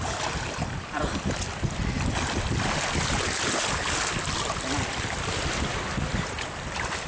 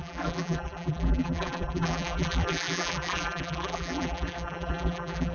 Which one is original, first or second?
first